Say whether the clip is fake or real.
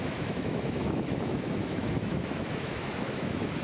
fake